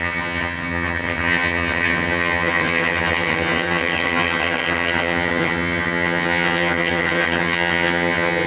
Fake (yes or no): yes